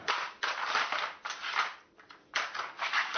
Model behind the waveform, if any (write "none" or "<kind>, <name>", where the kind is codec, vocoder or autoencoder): none